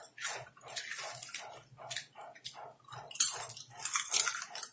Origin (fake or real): real